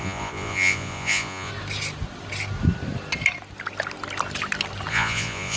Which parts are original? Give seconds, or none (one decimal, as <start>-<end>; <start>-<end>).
1.5-4.9